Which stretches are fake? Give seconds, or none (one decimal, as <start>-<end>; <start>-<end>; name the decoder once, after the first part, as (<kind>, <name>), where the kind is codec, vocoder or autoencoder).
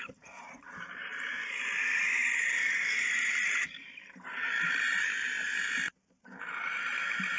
0.0-7.4 (vocoder, BigVGAN v2)